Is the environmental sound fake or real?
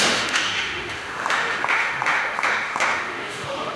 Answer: fake